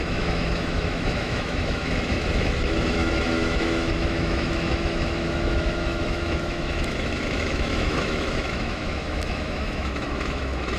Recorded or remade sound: remade